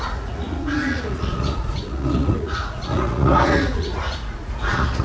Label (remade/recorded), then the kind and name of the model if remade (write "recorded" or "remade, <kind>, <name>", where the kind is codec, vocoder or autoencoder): remade, vocoder, Vocos